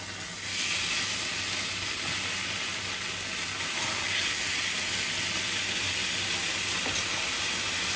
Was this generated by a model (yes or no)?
no